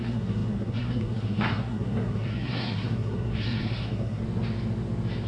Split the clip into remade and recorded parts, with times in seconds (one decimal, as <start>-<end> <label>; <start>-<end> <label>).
0.0-4.2 remade; 4.2-5.3 recorded